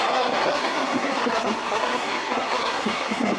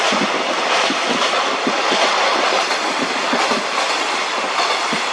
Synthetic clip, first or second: first